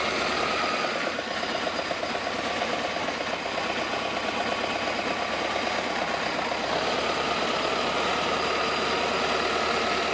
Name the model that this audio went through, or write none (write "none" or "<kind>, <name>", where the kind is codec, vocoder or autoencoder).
none